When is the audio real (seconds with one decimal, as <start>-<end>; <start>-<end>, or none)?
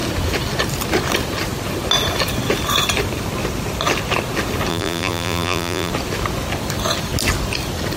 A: 0.0-4.7; 5.9-8.0